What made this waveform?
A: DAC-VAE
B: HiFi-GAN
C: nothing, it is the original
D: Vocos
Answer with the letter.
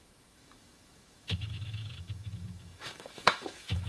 A